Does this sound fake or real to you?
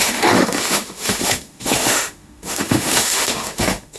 fake